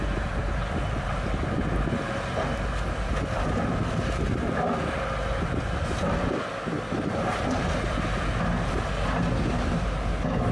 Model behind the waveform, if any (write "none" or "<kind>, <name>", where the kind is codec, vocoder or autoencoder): none